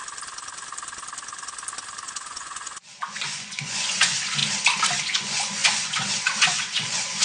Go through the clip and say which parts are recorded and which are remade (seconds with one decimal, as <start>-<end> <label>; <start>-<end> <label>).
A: 0.0-2.1 recorded; 2.1-4.4 remade; 4.4-5.0 recorded; 5.0-7.2 remade